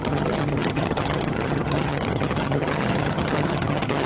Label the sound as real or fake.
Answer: fake